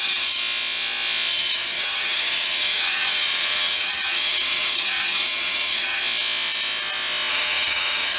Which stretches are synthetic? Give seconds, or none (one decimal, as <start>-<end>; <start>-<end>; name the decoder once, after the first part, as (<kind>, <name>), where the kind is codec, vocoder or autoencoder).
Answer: 0.0-0.4 (vocoder, HiFi-GAN); 1.3-6.0; 7.3-8.2